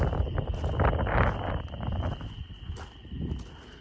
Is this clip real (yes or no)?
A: yes